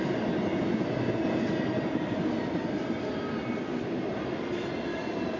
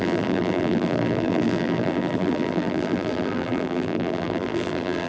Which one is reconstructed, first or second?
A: second